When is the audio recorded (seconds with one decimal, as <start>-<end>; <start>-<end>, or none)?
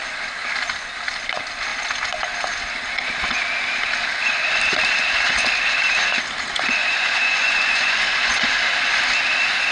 0.0-6.8; 8.6-9.7